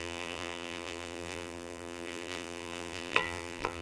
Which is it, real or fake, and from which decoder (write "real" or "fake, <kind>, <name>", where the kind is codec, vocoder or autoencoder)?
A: fake, vocoder, BigVGAN v2